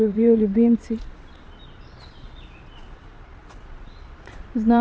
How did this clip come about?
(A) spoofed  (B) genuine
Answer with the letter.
A